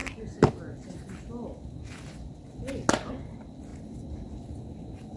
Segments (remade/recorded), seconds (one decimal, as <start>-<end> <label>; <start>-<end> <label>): 0.0-5.2 recorded

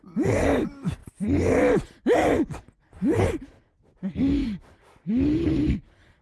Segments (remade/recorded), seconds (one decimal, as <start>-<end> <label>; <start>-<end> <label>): 0.0-6.2 recorded

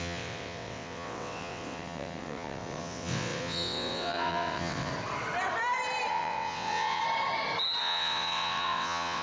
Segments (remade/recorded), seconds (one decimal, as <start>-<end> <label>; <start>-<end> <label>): 0.0-4.9 remade; 4.9-6.1 recorded; 6.1-7.0 remade; 7.0-7.8 recorded; 7.8-9.2 remade

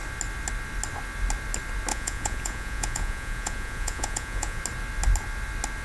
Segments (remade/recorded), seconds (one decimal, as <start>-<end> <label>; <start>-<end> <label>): 0.0-1.9 recorded; 1.9-4.6 remade; 4.6-5.8 recorded